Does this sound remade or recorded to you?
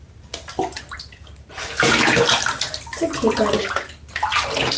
recorded